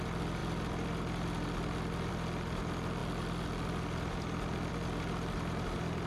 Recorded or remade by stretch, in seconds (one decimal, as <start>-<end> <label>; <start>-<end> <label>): 0.0-6.1 recorded